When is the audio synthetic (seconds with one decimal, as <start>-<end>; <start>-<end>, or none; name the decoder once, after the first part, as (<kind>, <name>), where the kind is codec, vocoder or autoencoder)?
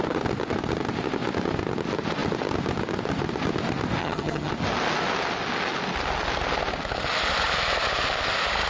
4.0-4.5 (vocoder, HiFi-GAN)